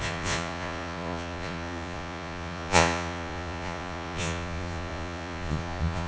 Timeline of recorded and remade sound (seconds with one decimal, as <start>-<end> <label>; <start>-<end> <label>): 0.0-6.1 remade